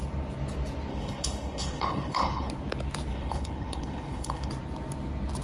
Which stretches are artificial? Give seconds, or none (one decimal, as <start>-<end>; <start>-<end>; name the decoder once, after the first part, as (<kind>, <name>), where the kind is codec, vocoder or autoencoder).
0.9-2.5 (codec, HILCodec); 3.1-4.5